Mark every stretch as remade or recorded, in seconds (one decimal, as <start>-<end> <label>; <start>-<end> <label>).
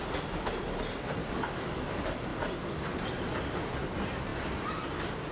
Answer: 0.0-1.2 recorded; 1.2-1.9 remade; 1.9-2.3 recorded; 2.3-2.9 remade; 2.9-5.3 recorded